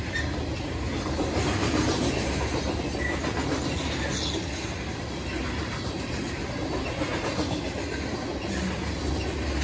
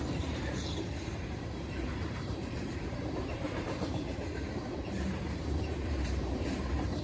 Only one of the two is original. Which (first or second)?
first